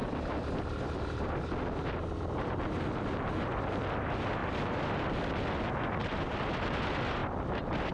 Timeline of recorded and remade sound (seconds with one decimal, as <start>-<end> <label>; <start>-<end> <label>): 0.0-1.3 remade; 1.3-4.4 recorded; 4.4-5.1 remade; 5.1-7.2 recorded; 7.2-7.9 remade